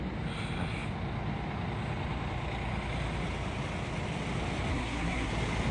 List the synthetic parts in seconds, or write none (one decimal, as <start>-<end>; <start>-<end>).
4.7-5.3